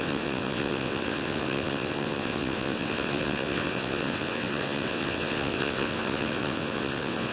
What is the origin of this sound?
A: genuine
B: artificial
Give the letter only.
B